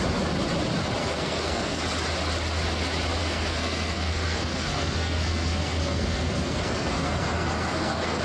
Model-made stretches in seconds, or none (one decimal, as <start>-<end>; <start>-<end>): 1.0-1.8; 3.2-8.2